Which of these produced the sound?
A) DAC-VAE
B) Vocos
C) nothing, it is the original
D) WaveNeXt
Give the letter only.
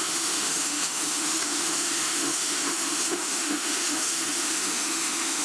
A